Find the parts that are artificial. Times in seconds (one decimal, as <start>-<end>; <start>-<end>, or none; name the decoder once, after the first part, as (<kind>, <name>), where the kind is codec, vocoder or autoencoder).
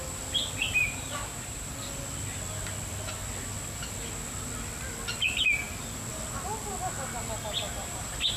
0.8-1.7 (vocoder, BigVGAN v2); 7.8-8.4